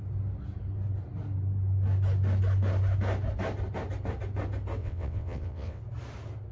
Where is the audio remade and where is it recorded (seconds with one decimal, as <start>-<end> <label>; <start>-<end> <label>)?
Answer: 0.0-4.8 recorded; 4.8-5.8 remade; 5.8-6.5 recorded